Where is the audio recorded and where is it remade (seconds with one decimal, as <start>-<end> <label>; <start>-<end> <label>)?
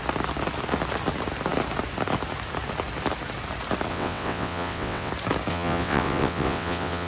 0.0-3.9 recorded; 3.9-5.1 remade; 5.1-5.5 recorded; 5.5-7.1 remade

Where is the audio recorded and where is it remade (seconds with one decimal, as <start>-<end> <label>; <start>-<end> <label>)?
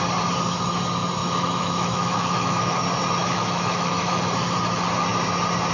0.0-1.2 recorded; 1.2-2.8 remade; 2.8-3.2 recorded; 3.2-4.2 remade; 4.2-5.7 recorded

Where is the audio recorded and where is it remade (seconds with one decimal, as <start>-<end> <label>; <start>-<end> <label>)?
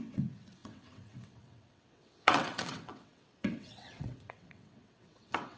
0.0-5.6 remade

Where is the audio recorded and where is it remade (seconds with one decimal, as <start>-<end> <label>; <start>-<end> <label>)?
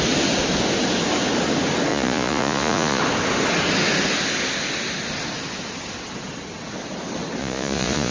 0.0-1.9 recorded; 1.9-3.0 remade; 3.0-7.4 recorded; 7.4-8.1 remade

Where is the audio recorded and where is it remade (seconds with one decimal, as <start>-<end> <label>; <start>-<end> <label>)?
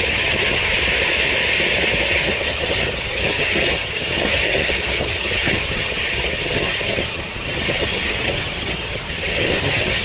0.0-0.7 remade; 0.7-2.1 recorded; 2.1-10.0 remade